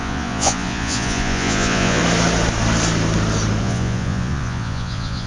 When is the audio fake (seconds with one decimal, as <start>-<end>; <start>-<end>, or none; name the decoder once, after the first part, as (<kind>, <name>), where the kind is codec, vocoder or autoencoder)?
0.0-2.0 (vocoder, Vocos); 3.6-5.3